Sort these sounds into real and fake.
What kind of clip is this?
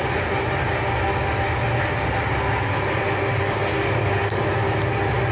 real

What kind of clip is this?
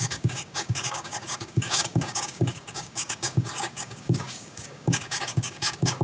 fake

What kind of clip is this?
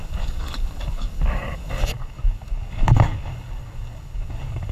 fake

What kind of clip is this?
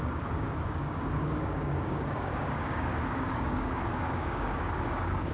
fake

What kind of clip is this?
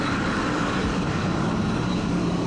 fake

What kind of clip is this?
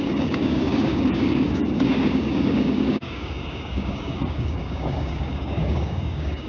fake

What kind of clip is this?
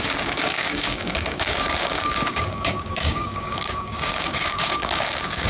fake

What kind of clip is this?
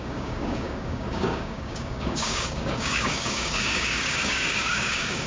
fake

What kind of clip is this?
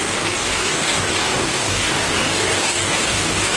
fake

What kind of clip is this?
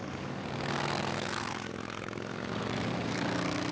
fake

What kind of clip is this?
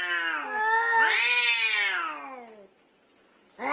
real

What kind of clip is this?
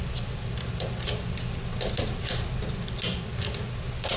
real